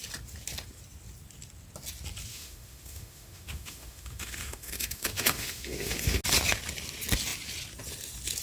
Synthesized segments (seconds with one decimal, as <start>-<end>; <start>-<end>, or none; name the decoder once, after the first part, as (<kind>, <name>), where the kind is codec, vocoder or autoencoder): 2.3-6.2 (autoencoder, DAC-VAE)